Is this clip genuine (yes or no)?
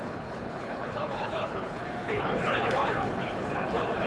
no